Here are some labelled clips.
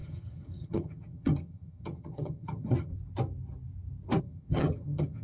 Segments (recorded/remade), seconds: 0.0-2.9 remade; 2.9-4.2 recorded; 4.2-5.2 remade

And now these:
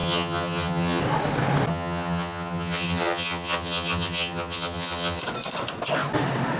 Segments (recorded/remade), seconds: 0.0-1.0 remade; 1.0-1.7 recorded; 1.7-5.2 remade; 5.2-6.6 recorded